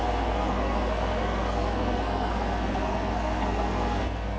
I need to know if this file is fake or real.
fake